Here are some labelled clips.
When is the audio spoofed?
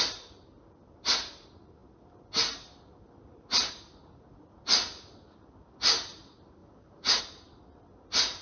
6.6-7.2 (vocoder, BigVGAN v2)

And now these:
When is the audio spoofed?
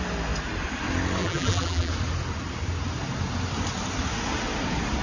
1.2-1.9 (vocoder, BigVGAN v2)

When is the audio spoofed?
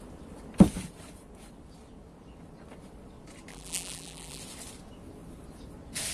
3.5-4.4 (vocoder, BigVGAN v2)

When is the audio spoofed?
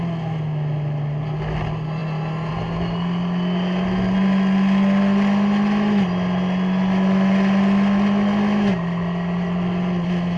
none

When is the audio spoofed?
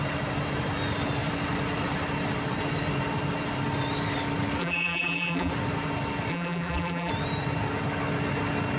4.6-5.5 (vocoder, BigVGAN v2); 6.3-7.1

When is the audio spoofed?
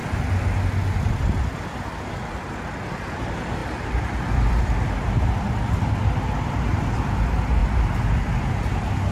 3.6-4.6 (vocoder, BigVGAN v2)